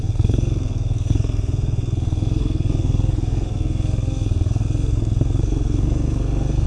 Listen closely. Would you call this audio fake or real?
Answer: fake